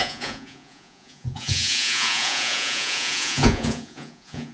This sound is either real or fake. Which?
fake